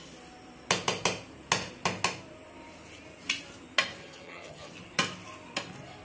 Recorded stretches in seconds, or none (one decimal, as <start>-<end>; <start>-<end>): 0.0-4.0; 4.7-6.0